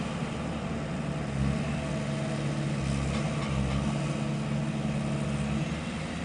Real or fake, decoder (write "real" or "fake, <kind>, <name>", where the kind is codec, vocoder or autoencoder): real